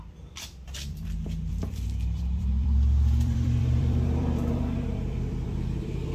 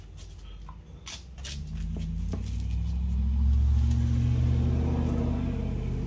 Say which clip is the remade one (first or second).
first